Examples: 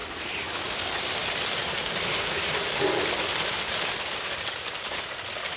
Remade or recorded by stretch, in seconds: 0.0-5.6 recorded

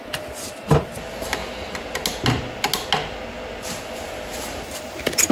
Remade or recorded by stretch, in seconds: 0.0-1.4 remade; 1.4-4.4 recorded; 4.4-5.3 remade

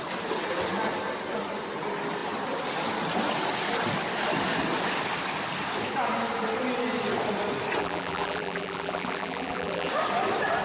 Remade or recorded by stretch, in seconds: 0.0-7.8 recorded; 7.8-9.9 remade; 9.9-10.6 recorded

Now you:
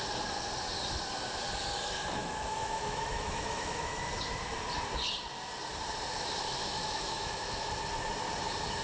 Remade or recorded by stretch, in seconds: 0.0-2.2 recorded; 2.2-4.1 remade; 4.1-6.6 recorded; 6.6-7.7 remade; 7.7-8.8 recorded

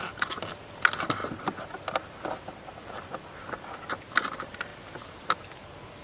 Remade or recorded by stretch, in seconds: 0.0-6.0 recorded